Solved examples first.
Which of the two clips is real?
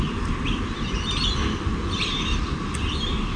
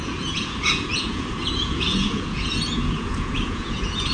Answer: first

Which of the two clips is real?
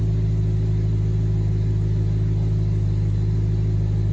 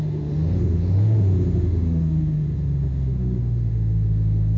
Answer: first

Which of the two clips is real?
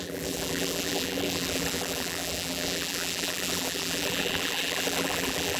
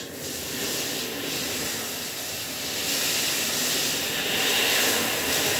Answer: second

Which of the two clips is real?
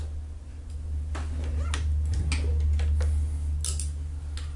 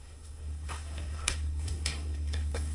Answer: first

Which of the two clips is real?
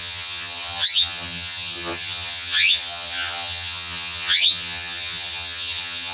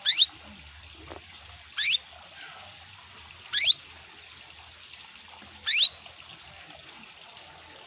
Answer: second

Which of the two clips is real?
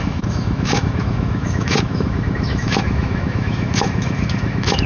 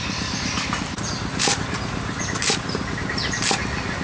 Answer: second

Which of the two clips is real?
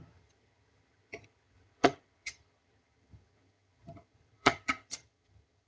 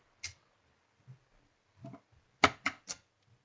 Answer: second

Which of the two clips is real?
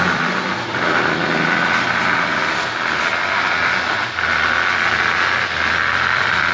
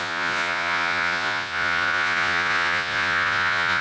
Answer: first